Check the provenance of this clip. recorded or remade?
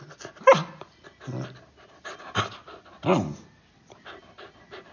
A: recorded